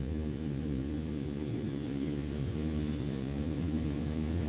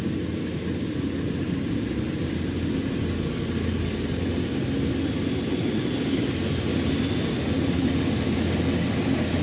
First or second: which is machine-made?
first